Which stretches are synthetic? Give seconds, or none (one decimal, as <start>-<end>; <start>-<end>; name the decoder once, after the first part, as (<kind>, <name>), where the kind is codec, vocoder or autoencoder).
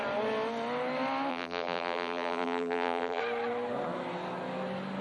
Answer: 1.3-3.2 (vocoder, BigVGAN v2)